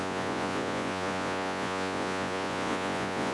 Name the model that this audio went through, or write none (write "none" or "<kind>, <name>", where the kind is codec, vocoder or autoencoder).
vocoder, Vocos